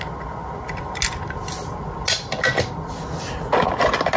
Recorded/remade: recorded